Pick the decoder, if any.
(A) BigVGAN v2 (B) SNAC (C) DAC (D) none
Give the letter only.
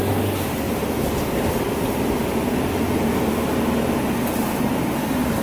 D